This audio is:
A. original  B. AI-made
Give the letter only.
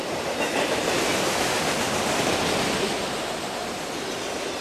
A